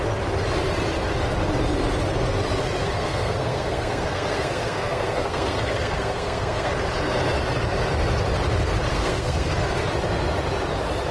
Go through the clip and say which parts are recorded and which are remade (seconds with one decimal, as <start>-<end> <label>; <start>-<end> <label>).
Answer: 0.0-2.8 recorded; 2.8-6.7 remade; 6.7-8.9 recorded; 8.9-9.5 remade; 9.5-11.1 recorded